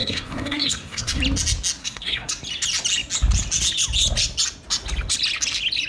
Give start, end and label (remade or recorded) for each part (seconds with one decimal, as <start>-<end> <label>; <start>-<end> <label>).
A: 0.0-1.2 remade; 1.2-1.8 recorded; 1.8-2.3 remade; 2.3-5.9 recorded